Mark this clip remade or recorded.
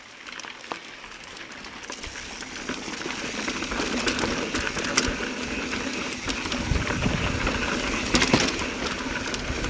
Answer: recorded